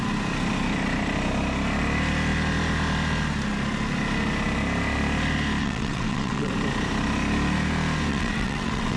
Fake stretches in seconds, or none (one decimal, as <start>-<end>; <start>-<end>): 5.6-6.5; 8.1-9.0